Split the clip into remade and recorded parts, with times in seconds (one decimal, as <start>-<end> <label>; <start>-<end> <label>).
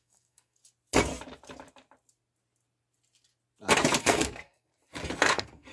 0.0-0.6 remade; 0.6-4.0 recorded; 4.0-4.7 remade; 4.7-5.2 recorded; 5.2-5.7 remade